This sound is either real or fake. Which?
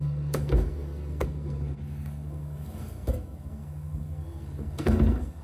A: fake